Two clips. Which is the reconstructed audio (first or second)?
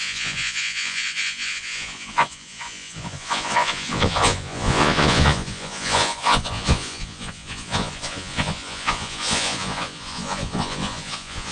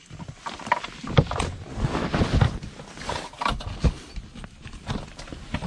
first